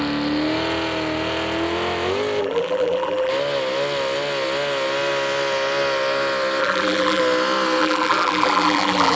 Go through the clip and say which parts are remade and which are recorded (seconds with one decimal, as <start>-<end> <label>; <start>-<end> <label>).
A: 0.0-2.4 recorded; 2.4-3.3 remade; 3.3-6.6 recorded; 6.6-7.2 remade; 7.2-7.8 recorded; 7.8-9.2 remade